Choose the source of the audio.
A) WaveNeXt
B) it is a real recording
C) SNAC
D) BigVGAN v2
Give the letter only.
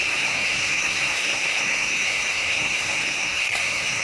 C